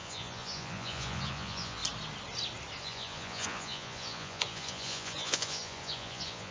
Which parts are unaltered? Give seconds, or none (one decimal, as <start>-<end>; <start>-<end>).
1.8-2.8